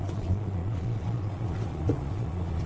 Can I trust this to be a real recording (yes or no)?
no